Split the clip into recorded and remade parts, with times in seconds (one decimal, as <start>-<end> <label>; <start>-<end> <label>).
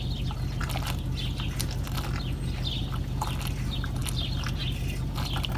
0.0-5.6 recorded